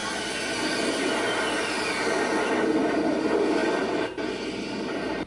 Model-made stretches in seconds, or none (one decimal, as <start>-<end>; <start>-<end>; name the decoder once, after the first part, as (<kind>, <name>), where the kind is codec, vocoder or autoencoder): none